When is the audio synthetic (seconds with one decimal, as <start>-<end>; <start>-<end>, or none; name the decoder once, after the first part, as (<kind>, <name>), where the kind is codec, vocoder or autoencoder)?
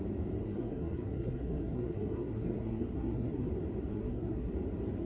0.4-3.5 (codec, SNAC); 3.9-4.5